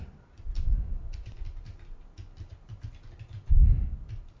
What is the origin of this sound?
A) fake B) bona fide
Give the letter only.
B